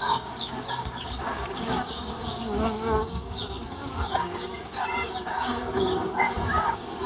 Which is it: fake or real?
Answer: fake